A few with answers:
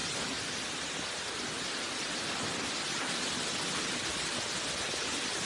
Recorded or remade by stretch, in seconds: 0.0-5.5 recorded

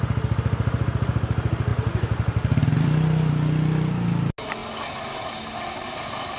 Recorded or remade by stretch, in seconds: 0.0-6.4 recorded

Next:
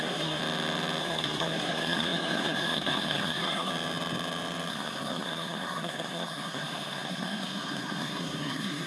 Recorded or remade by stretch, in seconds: 0.0-0.4 remade; 0.4-1.0 recorded; 1.0-3.7 remade; 3.7-4.7 recorded; 4.7-8.9 remade

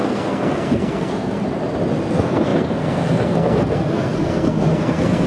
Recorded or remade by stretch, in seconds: 0.0-1.4 remade; 1.4-2.1 recorded; 2.1-5.3 remade